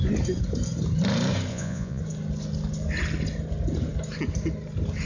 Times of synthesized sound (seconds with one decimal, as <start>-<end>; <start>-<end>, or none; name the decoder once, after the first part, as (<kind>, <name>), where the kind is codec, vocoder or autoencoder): 1.5-2.0 (vocoder, Vocos)